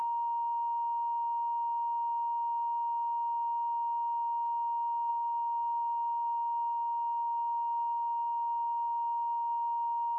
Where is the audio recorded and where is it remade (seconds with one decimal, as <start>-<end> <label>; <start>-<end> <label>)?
0.0-5.1 recorded; 5.1-10.2 remade